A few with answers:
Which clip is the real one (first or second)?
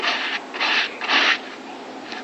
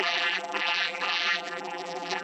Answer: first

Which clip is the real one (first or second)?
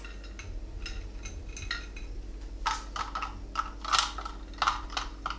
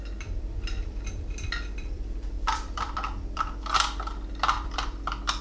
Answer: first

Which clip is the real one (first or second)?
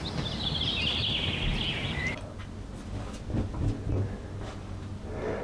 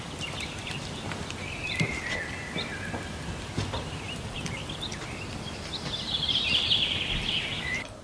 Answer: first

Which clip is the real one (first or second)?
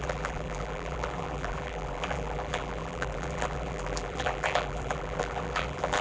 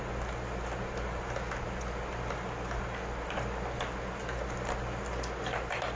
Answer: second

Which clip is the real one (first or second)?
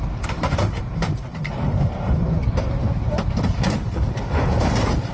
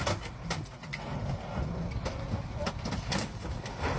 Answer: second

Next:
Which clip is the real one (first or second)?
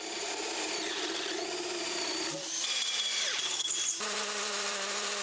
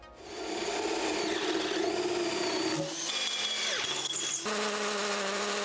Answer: second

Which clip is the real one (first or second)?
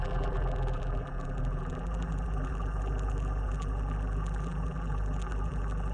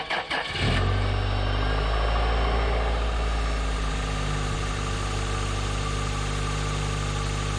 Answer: second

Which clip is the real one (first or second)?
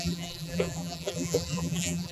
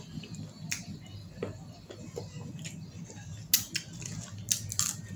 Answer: second